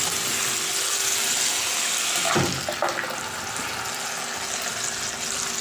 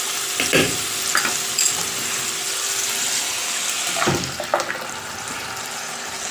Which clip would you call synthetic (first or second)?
second